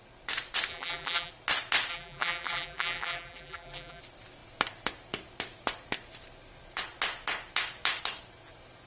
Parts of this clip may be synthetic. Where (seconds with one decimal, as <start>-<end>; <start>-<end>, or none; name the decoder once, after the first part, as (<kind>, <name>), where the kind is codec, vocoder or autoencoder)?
0.7-1.3 (vocoder, BigVGAN v2); 1.9-4.0